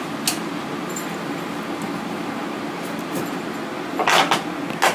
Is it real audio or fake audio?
real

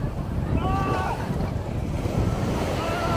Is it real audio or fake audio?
fake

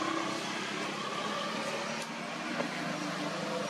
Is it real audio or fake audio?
real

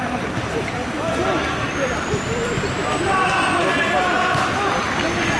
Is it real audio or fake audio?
real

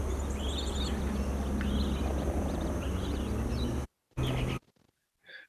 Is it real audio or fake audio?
real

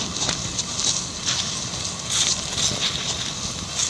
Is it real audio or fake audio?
real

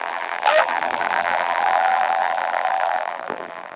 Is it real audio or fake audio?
fake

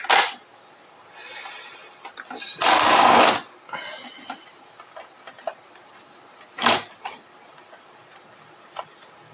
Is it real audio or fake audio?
real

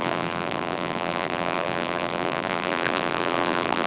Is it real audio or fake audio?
fake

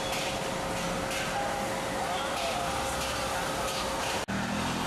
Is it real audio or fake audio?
real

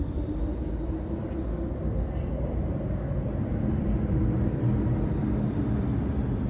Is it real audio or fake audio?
fake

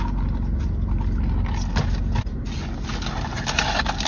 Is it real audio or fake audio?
real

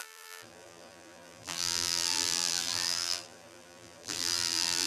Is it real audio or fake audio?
fake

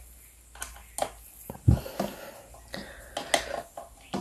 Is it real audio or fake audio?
real